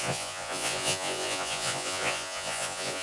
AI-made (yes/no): yes